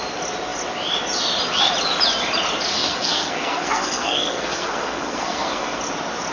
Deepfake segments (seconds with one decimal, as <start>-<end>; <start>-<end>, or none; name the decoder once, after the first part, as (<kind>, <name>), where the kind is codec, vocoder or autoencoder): 2.7-5.8 (codec, SNAC)